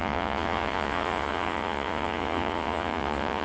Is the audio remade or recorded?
remade